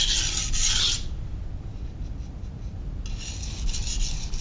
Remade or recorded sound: recorded